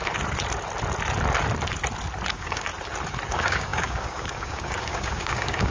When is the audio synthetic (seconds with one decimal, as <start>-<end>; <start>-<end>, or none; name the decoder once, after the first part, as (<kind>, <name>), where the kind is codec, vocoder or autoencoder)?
2.3-2.7 (codec, DAC); 3.3-5.7